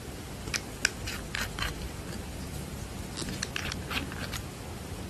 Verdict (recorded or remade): recorded